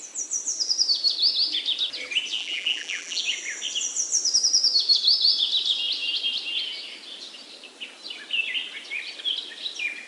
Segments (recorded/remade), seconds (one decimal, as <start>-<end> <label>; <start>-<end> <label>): 0.0-2.4 recorded; 2.4-3.2 remade; 3.2-10.1 recorded